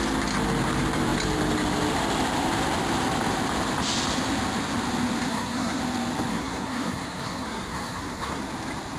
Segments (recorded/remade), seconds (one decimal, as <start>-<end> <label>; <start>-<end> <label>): 0.0-5.3 recorded; 5.3-5.8 remade; 5.8-6.3 recorded; 6.3-8.4 remade; 8.4-9.0 recorded